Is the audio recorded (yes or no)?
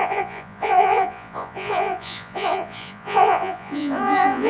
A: no